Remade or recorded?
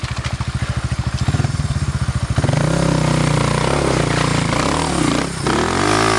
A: recorded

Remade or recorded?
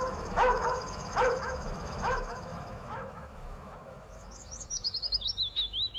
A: remade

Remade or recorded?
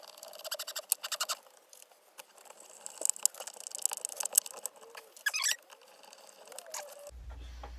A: recorded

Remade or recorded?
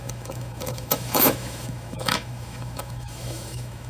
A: remade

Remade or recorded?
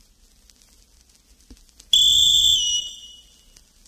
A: recorded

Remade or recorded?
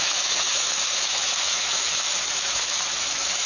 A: remade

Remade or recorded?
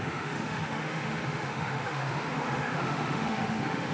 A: remade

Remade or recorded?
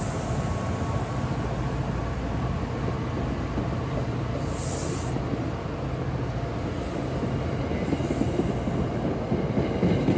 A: recorded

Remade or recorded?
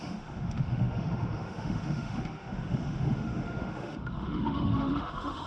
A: remade